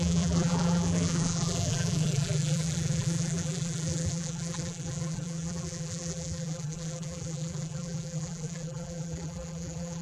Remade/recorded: remade